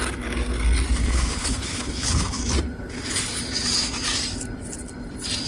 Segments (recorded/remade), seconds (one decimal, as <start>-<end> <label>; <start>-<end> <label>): 0.0-1.0 recorded; 1.0-2.4 remade; 2.4-5.5 recorded